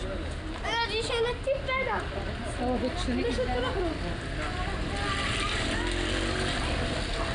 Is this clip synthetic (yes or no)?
no